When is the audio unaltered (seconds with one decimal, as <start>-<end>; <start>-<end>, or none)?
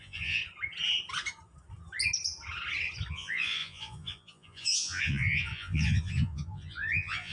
0.4-3.1